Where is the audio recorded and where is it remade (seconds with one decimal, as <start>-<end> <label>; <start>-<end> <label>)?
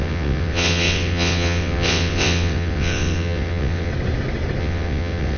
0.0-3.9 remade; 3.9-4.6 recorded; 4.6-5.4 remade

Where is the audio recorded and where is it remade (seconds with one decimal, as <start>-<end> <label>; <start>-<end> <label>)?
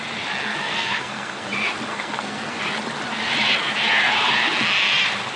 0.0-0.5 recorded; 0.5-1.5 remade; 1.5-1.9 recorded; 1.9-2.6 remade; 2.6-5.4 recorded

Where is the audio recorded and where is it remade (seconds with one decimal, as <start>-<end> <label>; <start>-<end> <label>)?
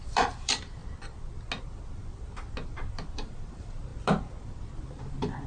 0.0-0.8 remade; 0.8-3.5 recorded; 3.5-3.9 remade; 3.9-4.8 recorded; 4.8-5.5 remade